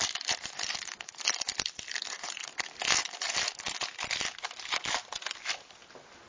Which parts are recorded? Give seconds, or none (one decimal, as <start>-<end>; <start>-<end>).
0.0-6.3